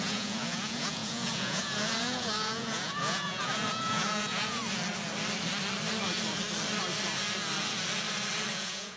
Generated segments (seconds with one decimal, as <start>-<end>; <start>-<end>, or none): 0.0-4.6; 8.5-9.0